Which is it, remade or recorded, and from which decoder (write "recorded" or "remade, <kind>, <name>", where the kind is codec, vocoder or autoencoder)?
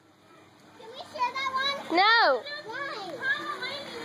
recorded